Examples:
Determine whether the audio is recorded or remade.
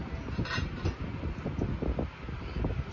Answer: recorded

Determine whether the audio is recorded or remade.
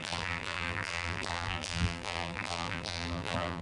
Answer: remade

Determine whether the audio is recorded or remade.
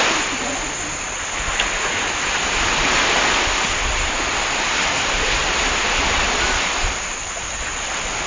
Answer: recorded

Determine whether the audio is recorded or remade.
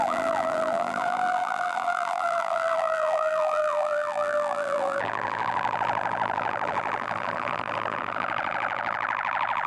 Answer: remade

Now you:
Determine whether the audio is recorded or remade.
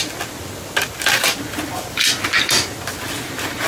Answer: recorded